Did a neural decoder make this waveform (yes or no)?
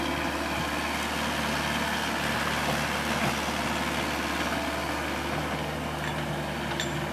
no